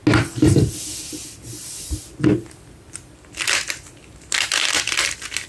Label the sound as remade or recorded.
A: recorded